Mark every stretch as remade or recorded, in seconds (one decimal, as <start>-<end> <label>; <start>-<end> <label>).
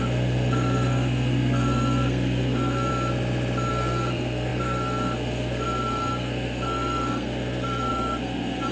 0.0-2.9 remade; 2.9-3.7 recorded; 3.7-8.7 remade